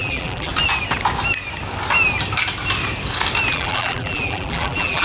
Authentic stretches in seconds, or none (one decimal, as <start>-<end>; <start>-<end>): 0.5-3.5